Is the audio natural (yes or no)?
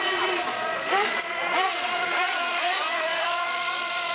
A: no